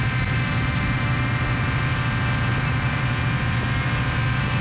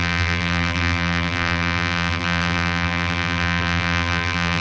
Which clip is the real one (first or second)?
first